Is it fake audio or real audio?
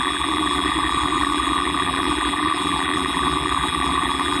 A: fake